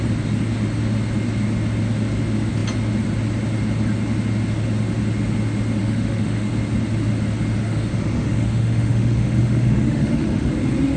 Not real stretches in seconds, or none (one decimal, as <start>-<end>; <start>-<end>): 5.8-6.5; 7.6-10.5